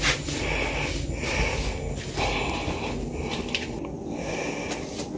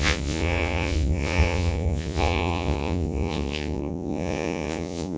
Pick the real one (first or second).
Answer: first